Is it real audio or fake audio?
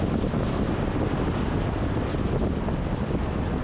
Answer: real